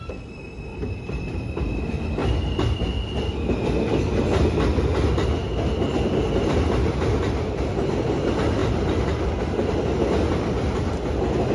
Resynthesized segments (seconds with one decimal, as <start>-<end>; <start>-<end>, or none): 0.7-1.2; 8.6-10.0